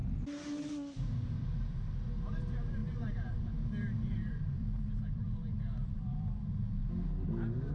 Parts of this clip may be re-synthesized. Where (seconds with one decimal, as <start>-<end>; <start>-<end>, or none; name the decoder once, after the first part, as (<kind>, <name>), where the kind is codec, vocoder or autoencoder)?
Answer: 2.3-6.8 (vocoder, BigVGAN v2)